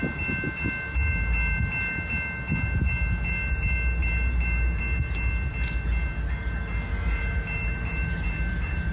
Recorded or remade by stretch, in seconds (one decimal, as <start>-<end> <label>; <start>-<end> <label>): 0.0-4.0 recorded; 4.0-4.8 remade; 4.8-6.9 recorded; 6.9-8.9 remade